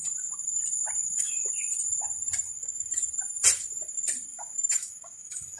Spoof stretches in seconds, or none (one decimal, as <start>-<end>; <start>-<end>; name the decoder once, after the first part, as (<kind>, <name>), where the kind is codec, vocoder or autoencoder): 1.0-1.5 (autoencoder, DAC-VAE); 2.6-3.1; 4.3-5.6